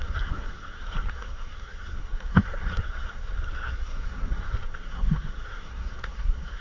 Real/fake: fake